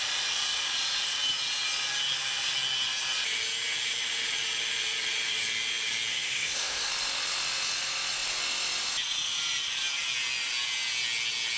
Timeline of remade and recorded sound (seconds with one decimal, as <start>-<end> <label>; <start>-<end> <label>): 0.0-6.1 recorded; 6.1-6.9 remade; 6.9-11.6 recorded